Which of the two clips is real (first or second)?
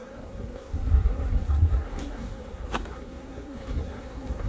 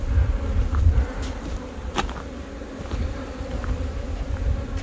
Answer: second